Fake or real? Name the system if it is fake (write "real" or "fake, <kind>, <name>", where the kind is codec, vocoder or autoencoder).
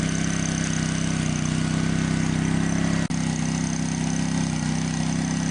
real